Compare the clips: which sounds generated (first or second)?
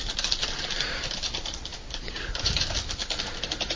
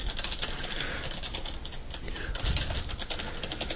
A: first